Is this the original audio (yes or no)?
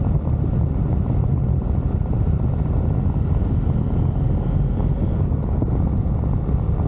yes